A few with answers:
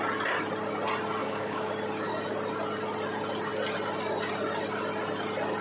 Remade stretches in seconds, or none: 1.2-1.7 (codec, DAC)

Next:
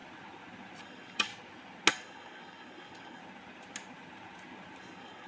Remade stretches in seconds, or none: 0.8-1.3 (codec, DAC); 1.9-3.2; 4.8-5.3

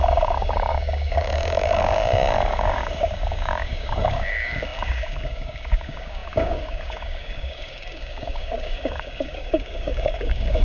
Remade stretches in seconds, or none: 0.0-10.6 (codec, DAC)